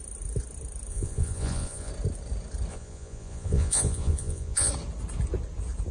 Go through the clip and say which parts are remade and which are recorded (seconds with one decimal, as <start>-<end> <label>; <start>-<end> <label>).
0.0-0.9 recorded; 0.9-1.9 remade; 1.9-2.7 recorded; 2.7-4.7 remade; 4.7-5.9 recorded